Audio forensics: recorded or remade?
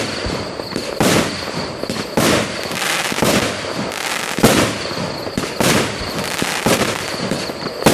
recorded